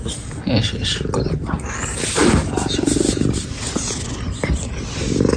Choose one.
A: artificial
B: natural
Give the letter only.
B